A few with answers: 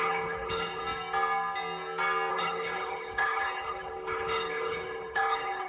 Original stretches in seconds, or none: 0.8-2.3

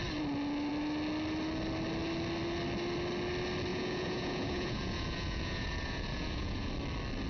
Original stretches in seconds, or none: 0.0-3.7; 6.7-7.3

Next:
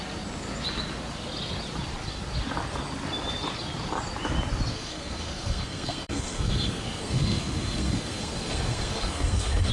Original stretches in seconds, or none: 0.0-4.7

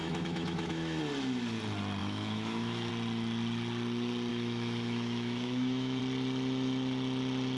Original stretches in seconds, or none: 1.0-2.0; 2.9-4.3; 6.0-7.6

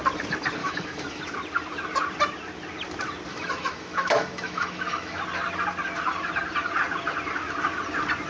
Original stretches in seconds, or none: 0.0-0.6; 1.2-3.3; 5.2-8.3